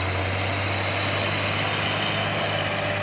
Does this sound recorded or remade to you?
recorded